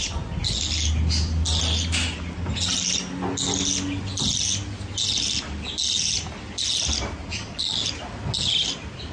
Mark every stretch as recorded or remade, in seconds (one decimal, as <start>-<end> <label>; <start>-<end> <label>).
0.0-9.1 recorded

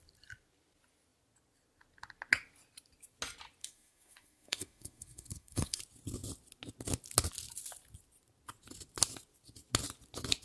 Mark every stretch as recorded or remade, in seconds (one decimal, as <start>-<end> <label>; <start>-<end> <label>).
0.0-3.6 recorded; 3.6-5.8 remade; 5.8-10.4 recorded

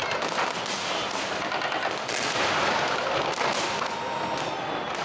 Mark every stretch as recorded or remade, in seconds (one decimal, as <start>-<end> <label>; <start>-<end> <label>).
0.0-5.0 recorded

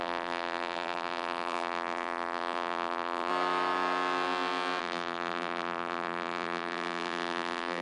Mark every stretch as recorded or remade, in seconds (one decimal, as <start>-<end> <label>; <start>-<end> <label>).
0.0-3.3 remade; 3.3-4.8 recorded; 4.8-7.8 remade

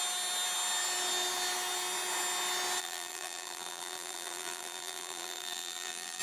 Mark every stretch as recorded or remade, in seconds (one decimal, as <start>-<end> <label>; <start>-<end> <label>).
0.0-2.8 recorded; 2.8-6.2 remade